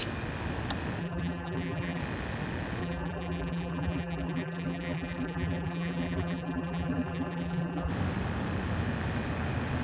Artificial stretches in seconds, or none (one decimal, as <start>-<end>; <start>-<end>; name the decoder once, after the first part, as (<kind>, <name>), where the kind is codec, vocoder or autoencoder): 1.0-2.0 (vocoder, BigVGAN v2); 2.8-7.9